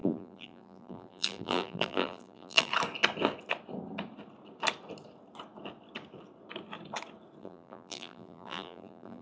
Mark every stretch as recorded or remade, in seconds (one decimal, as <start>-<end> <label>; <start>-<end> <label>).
0.0-2.7 remade; 2.7-7.4 recorded; 7.4-9.2 remade